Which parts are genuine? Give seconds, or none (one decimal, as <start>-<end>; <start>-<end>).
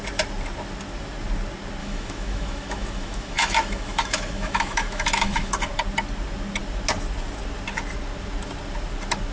0.0-1.8; 5.5-9.3